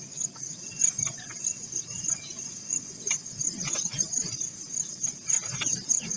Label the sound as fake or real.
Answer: real